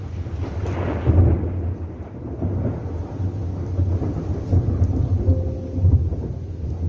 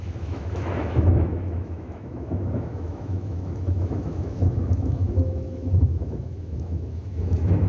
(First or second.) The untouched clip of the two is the first